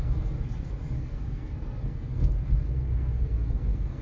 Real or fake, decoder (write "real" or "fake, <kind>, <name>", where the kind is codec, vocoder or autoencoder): fake, codec, SNAC